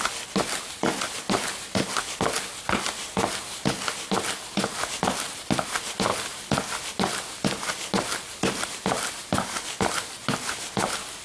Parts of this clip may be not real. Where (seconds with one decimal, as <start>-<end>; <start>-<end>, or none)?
none